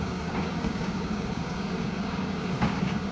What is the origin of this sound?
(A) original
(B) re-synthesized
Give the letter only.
B